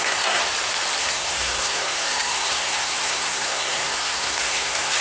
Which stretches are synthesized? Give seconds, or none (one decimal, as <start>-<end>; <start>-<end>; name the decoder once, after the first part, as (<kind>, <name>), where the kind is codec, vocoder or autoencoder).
0.0-0.4 (codec, SNAC); 1.0-5.0